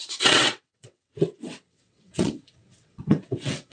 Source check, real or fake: fake